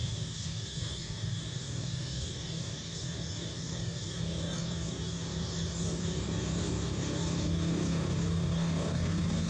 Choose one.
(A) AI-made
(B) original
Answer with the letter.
A